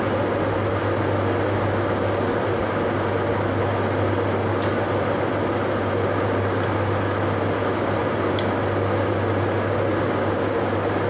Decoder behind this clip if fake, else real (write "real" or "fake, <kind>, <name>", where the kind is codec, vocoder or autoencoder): real